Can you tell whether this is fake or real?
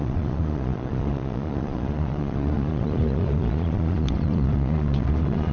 fake